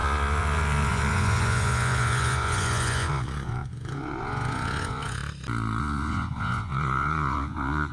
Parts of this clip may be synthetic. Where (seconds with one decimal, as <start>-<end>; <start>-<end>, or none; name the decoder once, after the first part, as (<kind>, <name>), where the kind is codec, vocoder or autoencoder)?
0.0-5.2 (vocoder, Vocos); 5.8-7.9